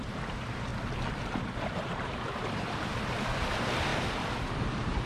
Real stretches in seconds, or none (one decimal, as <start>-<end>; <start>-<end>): 0.7-1.6; 3.9-4.6